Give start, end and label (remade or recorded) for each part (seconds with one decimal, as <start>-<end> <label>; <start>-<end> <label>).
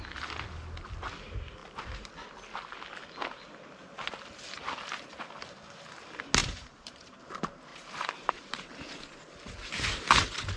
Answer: 0.0-1.6 recorded; 1.6-2.1 remade; 2.1-6.4 recorded; 6.4-7.2 remade; 7.2-7.7 recorded; 7.7-8.7 remade; 8.7-10.6 recorded